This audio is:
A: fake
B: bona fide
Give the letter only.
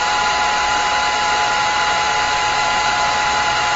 B